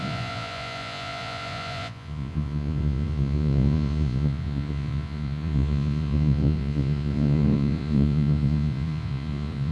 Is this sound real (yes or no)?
no